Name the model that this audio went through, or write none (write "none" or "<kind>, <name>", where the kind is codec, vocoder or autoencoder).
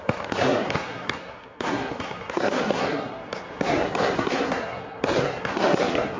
codec, SNAC